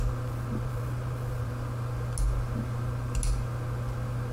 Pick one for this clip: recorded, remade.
recorded